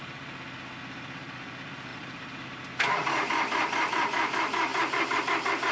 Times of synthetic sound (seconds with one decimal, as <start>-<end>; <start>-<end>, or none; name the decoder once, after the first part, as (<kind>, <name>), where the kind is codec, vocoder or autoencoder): 1.9-2.7 (vocoder, BigVGAN v2)